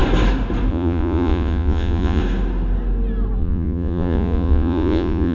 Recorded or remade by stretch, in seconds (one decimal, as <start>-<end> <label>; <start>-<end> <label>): 0.0-0.7 recorded; 0.7-2.2 remade; 2.2-3.4 recorded; 3.4-5.3 remade